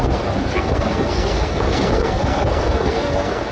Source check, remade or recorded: remade